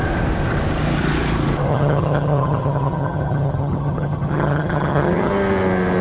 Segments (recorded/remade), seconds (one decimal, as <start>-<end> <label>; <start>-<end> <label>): 0.0-1.7 recorded; 1.7-5.3 remade; 5.3-6.0 recorded